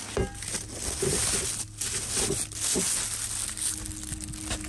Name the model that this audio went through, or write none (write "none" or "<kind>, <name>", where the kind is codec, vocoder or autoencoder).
none